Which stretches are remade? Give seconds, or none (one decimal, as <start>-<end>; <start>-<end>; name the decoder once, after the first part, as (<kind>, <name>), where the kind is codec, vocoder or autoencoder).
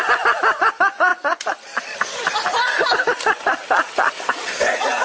1.1-4.1 (vocoder, BigVGAN v2)